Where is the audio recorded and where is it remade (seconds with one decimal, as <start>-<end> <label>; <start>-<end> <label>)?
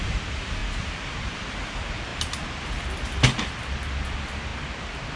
0.0-0.6 recorded; 0.6-1.5 remade; 1.5-5.2 recorded